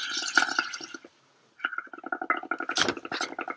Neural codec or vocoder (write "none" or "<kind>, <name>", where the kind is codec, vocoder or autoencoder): none